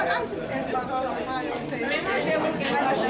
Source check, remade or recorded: remade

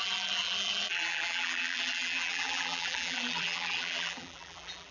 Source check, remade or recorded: remade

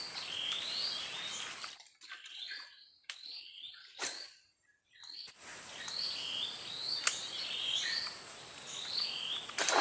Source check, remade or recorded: recorded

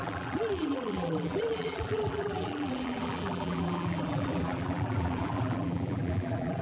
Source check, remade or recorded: remade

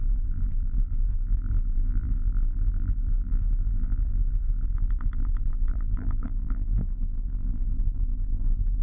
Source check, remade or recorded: remade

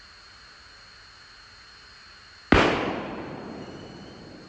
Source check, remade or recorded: recorded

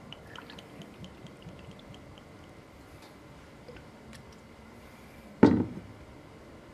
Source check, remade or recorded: remade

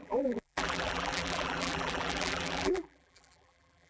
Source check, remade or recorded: remade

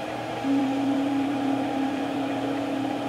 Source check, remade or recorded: remade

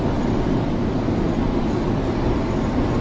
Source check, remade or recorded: recorded